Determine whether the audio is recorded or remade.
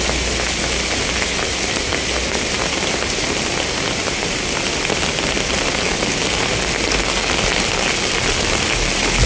recorded